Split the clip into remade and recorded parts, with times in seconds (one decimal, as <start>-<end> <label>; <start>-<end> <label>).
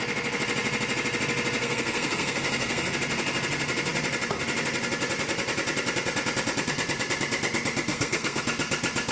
0.0-1.6 recorded; 1.6-2.9 remade; 2.9-7.9 recorded; 7.9-8.4 remade; 8.4-9.1 recorded